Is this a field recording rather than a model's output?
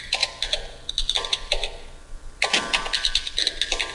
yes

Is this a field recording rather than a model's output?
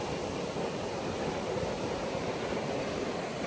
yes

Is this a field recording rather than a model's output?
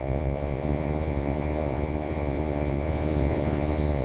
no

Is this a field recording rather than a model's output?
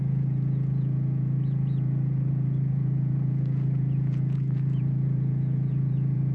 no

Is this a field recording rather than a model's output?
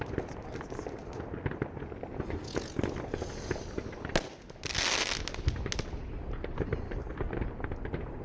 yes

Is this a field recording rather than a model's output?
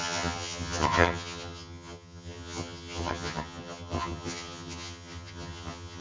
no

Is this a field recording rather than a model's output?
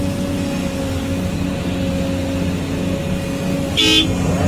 yes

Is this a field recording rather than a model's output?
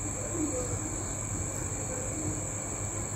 yes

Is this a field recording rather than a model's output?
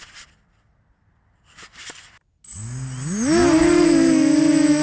yes